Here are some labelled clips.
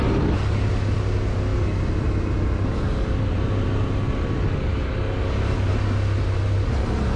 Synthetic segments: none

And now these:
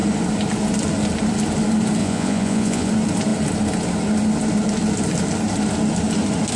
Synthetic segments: 2.0-2.9

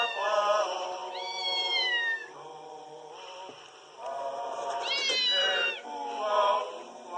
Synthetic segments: none

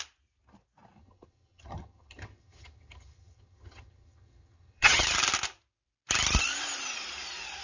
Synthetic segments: 1.0-5.0

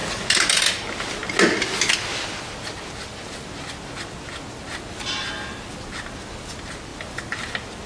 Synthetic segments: none

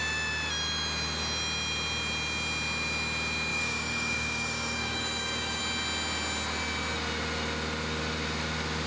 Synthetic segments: 3.5-5.6

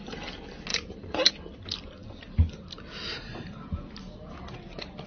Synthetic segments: 0.7-1.3